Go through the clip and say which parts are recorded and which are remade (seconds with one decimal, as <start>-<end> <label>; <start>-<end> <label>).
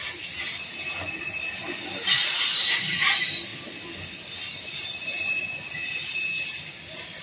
0.0-7.2 recorded